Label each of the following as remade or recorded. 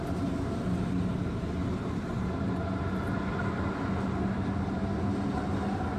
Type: recorded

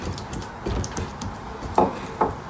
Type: recorded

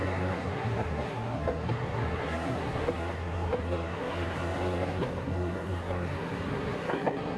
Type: remade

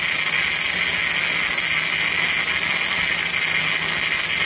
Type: recorded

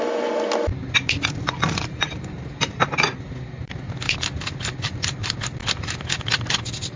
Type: recorded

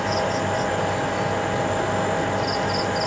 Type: recorded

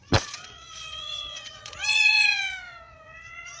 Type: remade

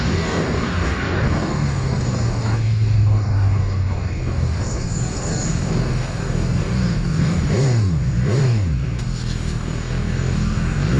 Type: remade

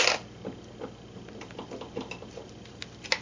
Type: recorded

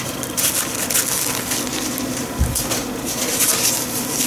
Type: recorded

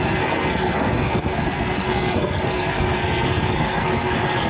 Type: remade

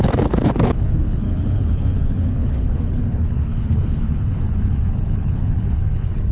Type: remade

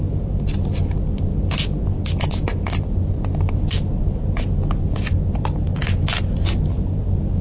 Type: recorded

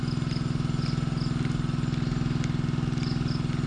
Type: recorded